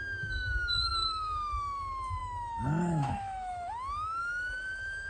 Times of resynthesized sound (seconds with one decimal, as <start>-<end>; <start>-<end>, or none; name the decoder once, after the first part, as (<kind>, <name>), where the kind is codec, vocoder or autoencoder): 0.9-1.8 (autoencoder, DAC-VAE); 2.2-3.7; 4.2-5.1